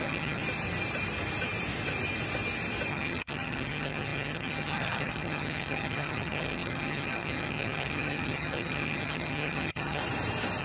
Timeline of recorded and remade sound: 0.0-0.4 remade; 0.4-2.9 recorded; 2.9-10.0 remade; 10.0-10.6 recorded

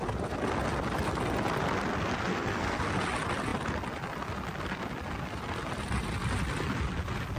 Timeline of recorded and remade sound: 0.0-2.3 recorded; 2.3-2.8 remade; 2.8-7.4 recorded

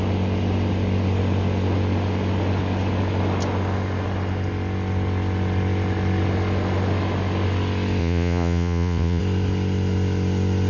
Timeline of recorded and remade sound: 0.0-8.0 recorded; 8.0-9.2 remade; 9.2-10.7 recorded

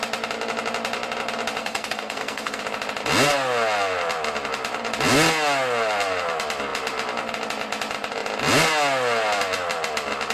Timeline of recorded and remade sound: 0.0-1.6 recorded; 1.6-2.6 remade; 2.6-10.3 recorded